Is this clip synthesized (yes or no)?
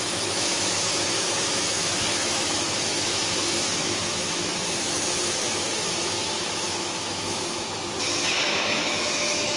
yes